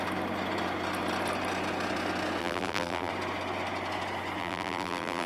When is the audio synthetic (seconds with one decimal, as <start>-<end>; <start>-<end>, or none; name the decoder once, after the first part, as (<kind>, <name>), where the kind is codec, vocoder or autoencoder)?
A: 2.4-3.1 (vocoder, BigVGAN v2); 4.4-5.3